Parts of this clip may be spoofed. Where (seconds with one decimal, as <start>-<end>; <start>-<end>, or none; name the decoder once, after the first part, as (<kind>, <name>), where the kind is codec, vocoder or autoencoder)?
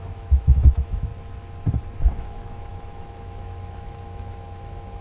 0.0-1.1 (autoencoder, DAC-VAE); 2.1-5.0